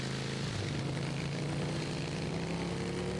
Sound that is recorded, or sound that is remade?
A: recorded